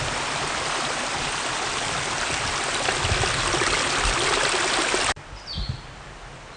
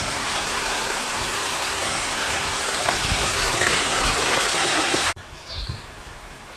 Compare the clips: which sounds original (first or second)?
first